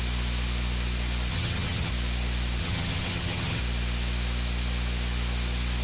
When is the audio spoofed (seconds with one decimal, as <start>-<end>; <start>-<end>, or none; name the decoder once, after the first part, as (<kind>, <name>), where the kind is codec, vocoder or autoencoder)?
1.3-1.9 (vocoder, HiFi-GAN); 2.6-3.6